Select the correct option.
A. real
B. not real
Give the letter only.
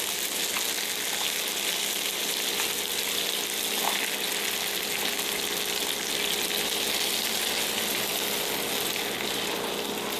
A